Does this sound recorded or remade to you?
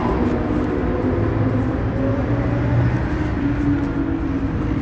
recorded